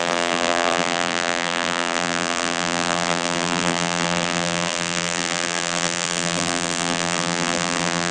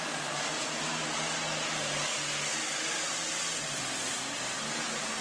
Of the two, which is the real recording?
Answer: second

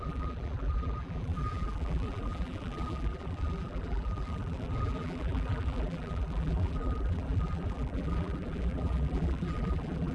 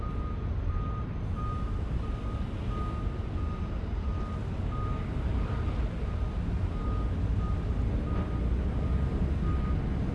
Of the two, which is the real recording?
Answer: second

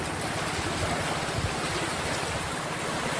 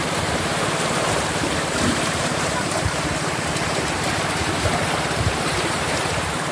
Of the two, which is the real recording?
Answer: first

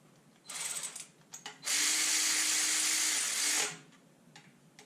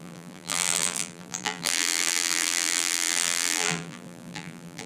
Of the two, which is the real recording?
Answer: first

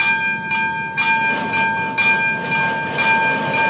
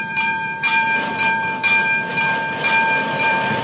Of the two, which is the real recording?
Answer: first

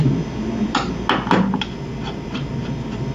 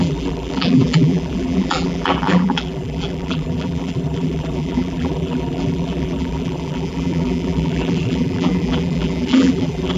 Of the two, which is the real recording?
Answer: first